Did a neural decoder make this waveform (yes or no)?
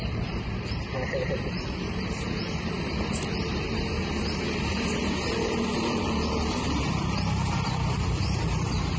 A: yes